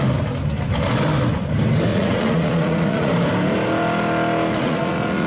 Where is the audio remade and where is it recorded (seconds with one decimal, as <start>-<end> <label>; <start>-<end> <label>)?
0.0-1.9 recorded; 1.9-3.1 remade; 3.1-4.6 recorded; 4.6-5.3 remade